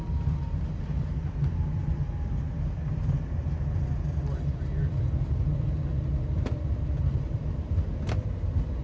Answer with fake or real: real